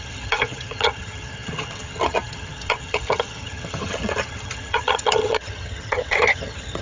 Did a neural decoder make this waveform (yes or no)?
yes